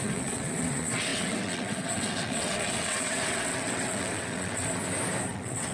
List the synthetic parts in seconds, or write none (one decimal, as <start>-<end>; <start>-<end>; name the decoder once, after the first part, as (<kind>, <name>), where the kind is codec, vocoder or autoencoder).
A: 0.0-4.8 (vocoder, WaveNeXt); 5.3-5.7